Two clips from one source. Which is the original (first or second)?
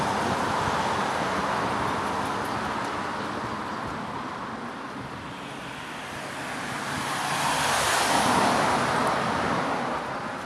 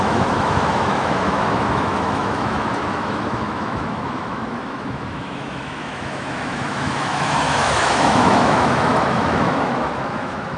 first